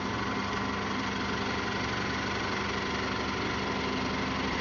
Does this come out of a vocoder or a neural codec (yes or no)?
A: no